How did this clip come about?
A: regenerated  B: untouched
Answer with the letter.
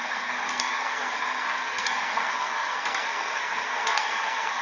A